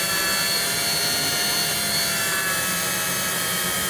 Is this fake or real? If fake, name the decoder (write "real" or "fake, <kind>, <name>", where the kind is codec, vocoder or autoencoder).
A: real